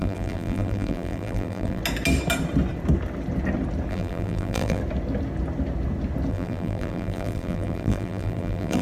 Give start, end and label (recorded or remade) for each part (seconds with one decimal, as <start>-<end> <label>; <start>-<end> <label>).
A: 0.0-1.8 remade; 1.8-3.9 recorded; 3.9-4.8 remade; 4.8-6.3 recorded; 6.3-8.8 remade